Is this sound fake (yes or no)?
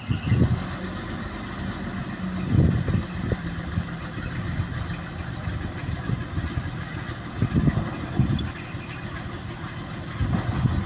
no